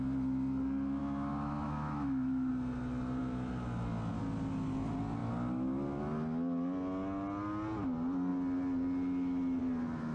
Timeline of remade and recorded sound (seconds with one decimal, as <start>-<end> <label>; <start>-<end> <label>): 0.0-1.0 recorded; 1.0-2.5 remade; 2.5-10.1 recorded